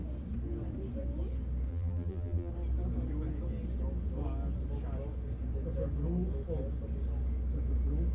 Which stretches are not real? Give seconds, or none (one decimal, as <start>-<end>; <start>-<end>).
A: 1.7-2.5